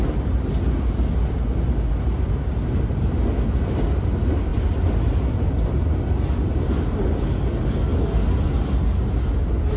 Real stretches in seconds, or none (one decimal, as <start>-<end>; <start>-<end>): 0.0-9.8